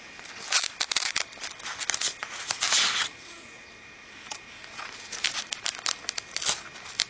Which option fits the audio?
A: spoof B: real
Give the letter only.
B